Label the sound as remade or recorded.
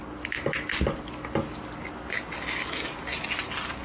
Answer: recorded